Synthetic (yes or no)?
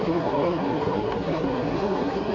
yes